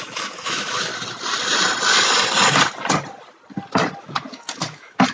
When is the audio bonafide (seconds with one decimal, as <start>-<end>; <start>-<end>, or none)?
0.9-4.0